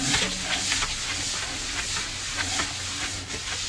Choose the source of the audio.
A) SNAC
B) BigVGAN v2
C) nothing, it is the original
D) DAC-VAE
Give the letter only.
C